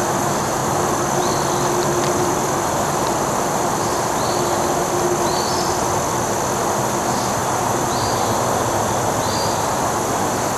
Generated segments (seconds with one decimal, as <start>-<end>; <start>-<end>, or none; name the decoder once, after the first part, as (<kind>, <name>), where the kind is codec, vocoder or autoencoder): 7.4-8.7 (vocoder, BigVGAN v2)